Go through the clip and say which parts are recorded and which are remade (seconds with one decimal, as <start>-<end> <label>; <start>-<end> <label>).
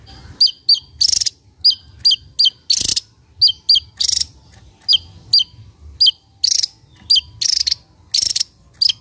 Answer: 0.0-9.0 recorded